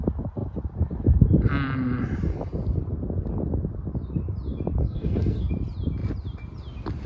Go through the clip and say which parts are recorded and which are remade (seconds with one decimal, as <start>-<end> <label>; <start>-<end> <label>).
0.0-4.8 recorded; 4.8-5.5 remade; 5.5-7.1 recorded